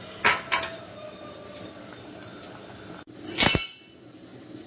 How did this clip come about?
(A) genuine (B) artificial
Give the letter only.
A